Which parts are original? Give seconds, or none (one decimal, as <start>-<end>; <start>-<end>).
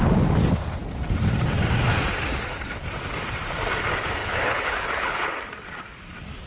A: 0.0-4.2; 5.4-6.5